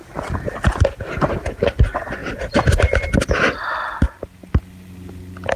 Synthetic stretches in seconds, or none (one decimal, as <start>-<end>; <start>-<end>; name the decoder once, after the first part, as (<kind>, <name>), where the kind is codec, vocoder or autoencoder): none